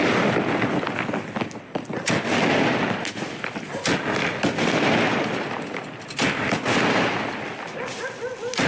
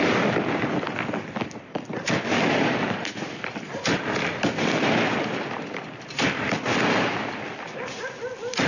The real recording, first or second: first